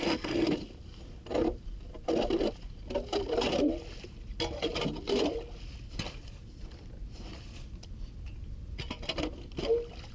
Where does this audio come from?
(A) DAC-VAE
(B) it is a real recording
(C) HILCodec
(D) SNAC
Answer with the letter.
B